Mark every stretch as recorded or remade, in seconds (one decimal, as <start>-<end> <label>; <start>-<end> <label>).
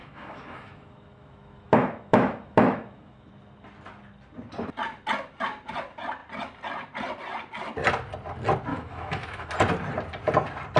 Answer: 0.0-3.3 remade; 3.3-8.7 recorded; 8.7-9.5 remade; 9.5-10.8 recorded